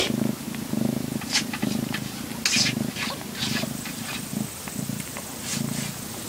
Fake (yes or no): no